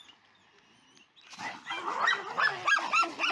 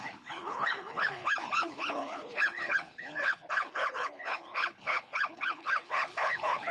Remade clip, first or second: second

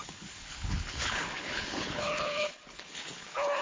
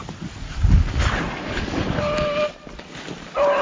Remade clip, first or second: first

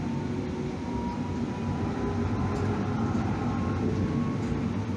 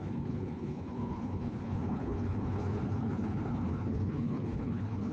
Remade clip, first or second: second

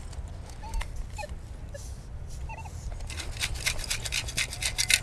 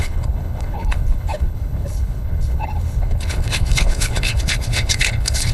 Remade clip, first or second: second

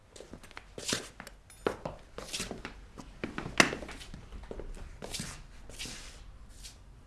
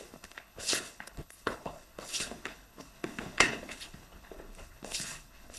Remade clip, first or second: second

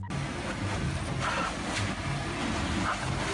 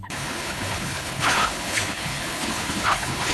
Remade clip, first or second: second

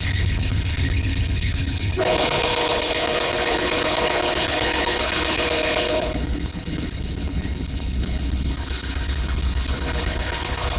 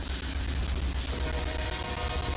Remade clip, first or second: first